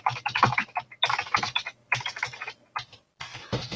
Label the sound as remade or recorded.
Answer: recorded